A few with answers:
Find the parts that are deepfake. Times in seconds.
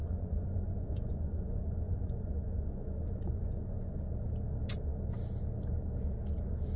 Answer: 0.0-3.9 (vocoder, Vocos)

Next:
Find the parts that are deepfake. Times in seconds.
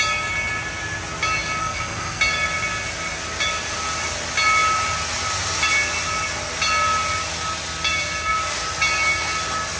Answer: 1.6-2.2 (codec, SNAC)